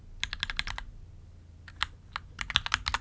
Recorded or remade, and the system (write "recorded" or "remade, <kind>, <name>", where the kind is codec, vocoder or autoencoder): recorded